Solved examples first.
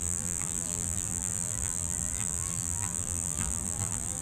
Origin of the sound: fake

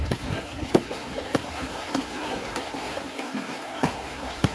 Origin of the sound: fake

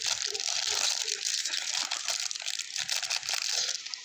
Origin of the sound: real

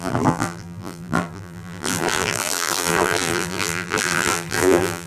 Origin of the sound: fake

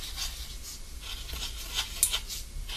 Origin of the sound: real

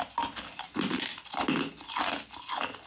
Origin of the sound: real